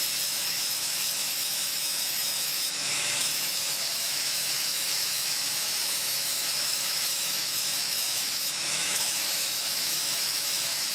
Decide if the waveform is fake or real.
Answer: fake